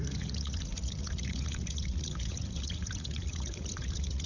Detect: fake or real fake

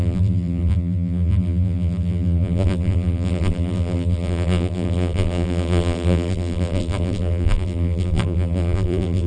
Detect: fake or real fake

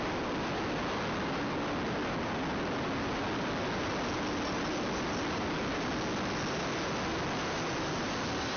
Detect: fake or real real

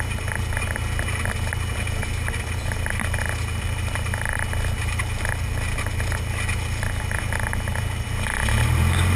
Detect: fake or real real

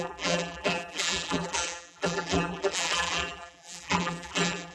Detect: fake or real fake